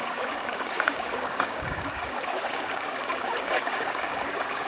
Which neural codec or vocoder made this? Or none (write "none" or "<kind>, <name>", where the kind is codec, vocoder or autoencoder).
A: codec, DAC